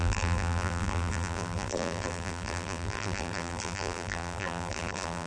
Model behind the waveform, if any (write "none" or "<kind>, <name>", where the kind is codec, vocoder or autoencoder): vocoder, BigVGAN v2